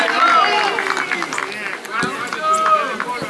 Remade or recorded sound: recorded